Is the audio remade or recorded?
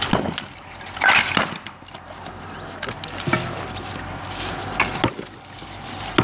recorded